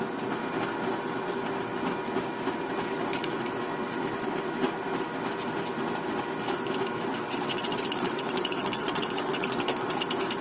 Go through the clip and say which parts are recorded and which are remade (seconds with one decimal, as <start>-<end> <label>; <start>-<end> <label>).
0.0-7.1 recorded; 7.1-9.9 remade; 9.9-10.4 recorded